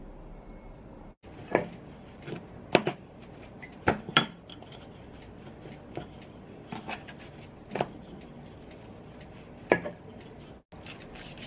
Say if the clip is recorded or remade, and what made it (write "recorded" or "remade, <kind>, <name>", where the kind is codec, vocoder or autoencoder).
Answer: recorded